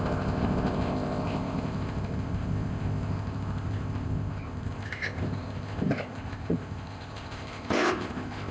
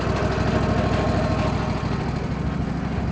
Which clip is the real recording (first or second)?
second